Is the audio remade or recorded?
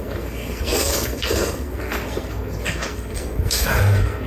remade